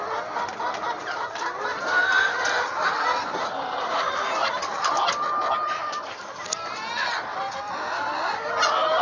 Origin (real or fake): real